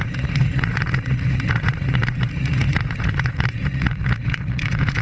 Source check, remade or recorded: remade